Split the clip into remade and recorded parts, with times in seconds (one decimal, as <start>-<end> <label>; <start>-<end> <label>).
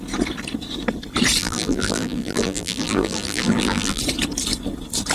0.0-1.4 recorded; 1.4-4.0 remade; 4.0-5.1 recorded